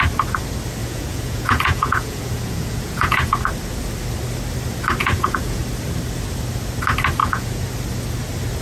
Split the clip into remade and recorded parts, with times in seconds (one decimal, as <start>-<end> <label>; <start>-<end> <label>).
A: 0.0-0.8 recorded; 0.8-3.3 remade; 3.3-5.0 recorded; 5.0-5.6 remade; 5.6-7.2 recorded; 7.2-7.7 remade; 7.7-8.6 recorded